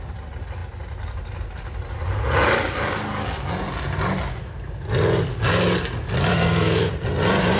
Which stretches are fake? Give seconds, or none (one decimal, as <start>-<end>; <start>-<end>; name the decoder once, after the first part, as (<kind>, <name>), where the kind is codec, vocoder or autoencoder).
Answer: 6.3-6.9 (codec, SNAC)